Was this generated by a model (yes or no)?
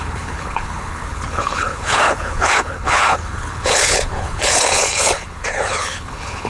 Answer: yes